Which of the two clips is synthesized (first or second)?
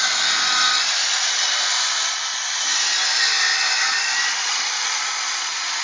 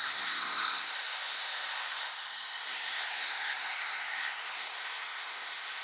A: second